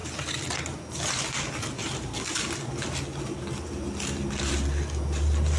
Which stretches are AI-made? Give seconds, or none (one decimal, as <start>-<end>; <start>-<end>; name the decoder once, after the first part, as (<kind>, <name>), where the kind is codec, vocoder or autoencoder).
none